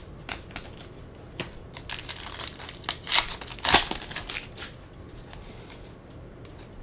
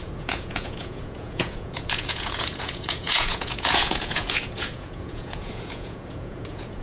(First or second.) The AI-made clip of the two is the second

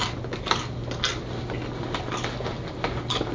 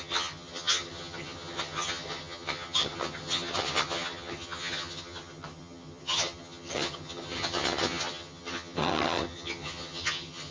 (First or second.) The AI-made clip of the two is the second